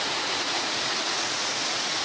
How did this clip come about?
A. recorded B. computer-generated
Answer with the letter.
B